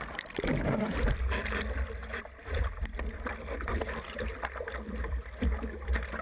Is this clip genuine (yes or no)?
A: no